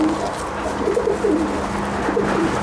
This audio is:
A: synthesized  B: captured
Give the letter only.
B